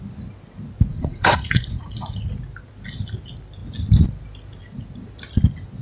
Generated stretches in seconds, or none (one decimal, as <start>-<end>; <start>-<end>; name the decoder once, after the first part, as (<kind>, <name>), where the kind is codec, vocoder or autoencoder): 0.9-2.2 (vocoder, Vocos)